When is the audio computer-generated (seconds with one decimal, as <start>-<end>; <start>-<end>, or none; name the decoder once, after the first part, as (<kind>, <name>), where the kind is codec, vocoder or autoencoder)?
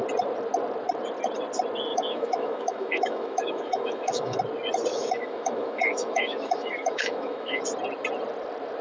1.9-4.4 (autoencoder, DAC-VAE); 4.9-7.6